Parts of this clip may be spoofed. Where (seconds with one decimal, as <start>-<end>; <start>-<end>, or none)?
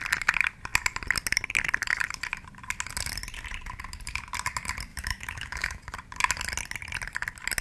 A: 4.9-5.8